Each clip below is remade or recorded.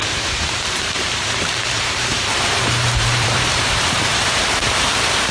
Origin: remade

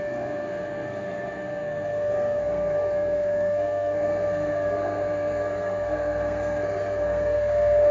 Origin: remade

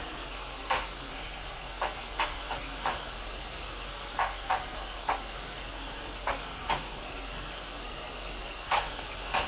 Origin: remade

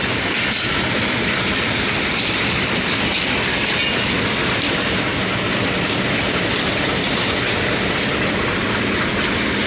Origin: recorded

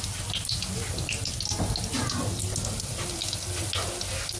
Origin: recorded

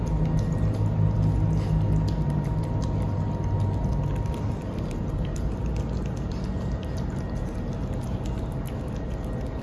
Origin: recorded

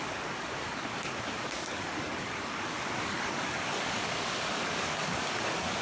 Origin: remade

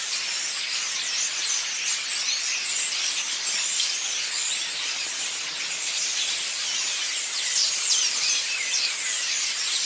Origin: recorded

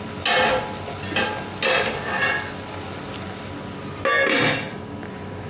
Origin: recorded